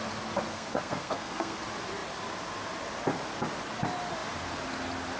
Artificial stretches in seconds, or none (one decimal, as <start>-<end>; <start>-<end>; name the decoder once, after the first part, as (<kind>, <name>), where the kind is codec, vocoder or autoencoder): 0.5-1.6 (codec, SNAC)